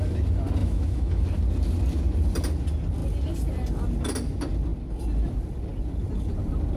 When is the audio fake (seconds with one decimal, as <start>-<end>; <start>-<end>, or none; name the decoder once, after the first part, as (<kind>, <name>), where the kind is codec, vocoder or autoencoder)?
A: 0.6-1.2 (autoencoder, DAC-VAE)